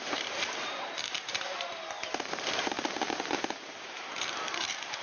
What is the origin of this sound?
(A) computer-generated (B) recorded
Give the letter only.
A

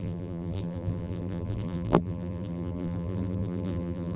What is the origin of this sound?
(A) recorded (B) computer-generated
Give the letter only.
B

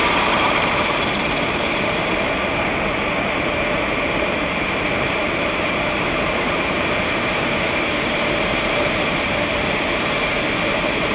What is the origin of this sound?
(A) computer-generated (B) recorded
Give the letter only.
A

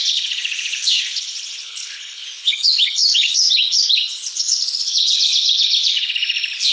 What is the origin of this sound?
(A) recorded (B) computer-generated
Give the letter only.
B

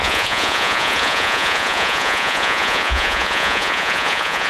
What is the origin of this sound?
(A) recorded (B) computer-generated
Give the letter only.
B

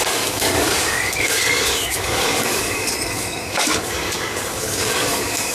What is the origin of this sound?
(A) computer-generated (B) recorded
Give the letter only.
A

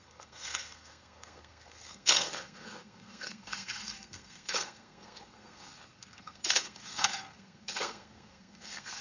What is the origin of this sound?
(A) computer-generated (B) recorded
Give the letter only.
A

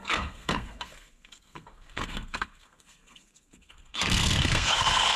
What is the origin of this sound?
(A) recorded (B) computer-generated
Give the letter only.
B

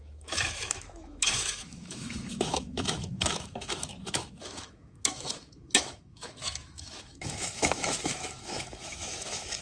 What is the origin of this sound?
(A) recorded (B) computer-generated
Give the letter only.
B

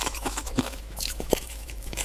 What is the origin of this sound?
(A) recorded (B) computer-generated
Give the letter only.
B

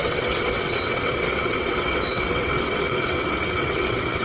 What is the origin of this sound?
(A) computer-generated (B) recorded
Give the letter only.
A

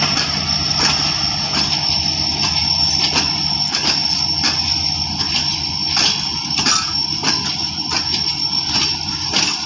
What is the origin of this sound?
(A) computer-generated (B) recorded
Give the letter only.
B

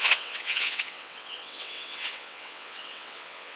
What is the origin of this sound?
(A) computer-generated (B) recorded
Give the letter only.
A